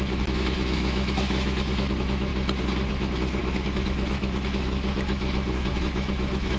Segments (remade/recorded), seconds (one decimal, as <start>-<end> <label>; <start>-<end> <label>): 0.0-2.3 remade; 2.3-2.9 recorded; 2.9-6.6 remade